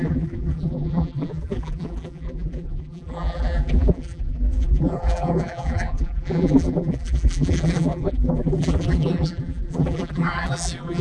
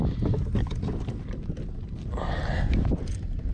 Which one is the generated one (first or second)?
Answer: first